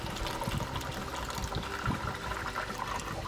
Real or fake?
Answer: real